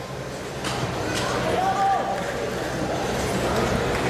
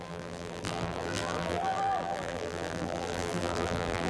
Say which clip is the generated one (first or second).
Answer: second